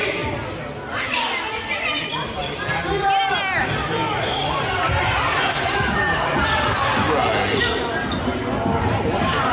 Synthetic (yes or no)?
no